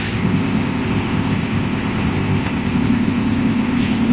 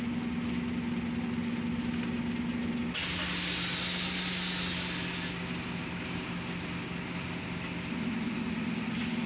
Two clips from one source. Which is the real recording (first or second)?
second